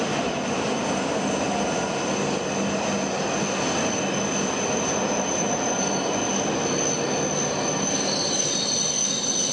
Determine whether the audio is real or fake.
real